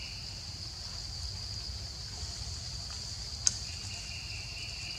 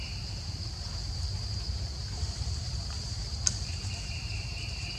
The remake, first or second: second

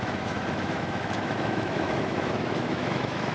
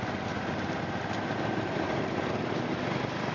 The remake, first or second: first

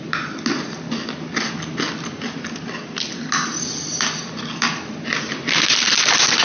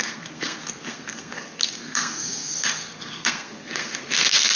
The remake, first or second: second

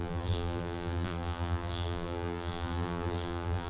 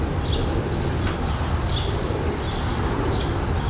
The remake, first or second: first